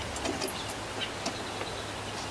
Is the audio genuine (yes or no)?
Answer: yes